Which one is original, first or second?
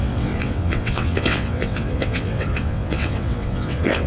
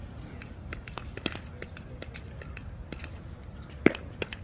second